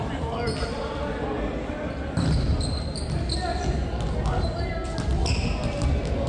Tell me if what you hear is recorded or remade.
recorded